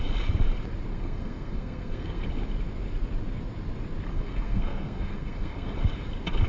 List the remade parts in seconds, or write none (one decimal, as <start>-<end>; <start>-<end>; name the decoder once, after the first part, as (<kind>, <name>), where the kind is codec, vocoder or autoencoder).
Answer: 0.9-2.3 (codec, SNAC); 4.1-5.7